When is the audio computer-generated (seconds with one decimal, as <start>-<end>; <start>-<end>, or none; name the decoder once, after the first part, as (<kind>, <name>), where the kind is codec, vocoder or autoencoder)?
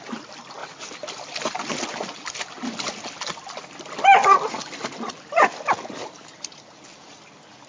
none